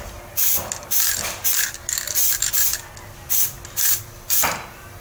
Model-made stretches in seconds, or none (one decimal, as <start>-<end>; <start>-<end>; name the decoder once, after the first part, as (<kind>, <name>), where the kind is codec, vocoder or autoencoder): 0.0-2.7 (vocoder, BigVGAN v2); 4.0-5.0